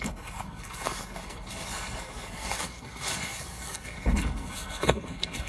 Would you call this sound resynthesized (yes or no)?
yes